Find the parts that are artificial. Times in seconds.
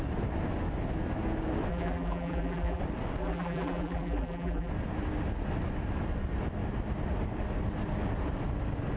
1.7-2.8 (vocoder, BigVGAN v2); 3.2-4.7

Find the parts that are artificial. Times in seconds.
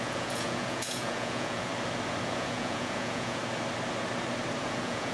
0.0-1.7 (vocoder, Vocos); 2.3-3.4; 4.6-5.1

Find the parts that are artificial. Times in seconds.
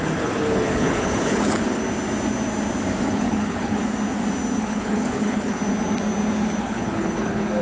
0.0-1.8 (codec, HILCodec); 3.1-3.8; 4.6-5.6; 6.6-7.6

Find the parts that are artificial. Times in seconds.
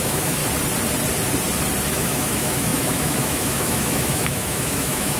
0.0-0.4 (autoencoder, DAC-VAE); 1.9-5.2